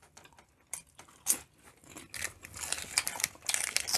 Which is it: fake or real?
real